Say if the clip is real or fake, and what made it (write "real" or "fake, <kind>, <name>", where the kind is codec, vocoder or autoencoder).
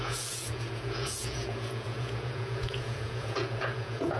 fake, vocoder, Vocos